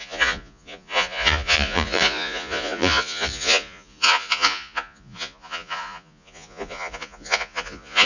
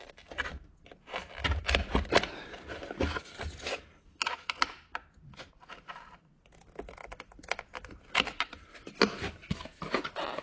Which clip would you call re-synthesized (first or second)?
first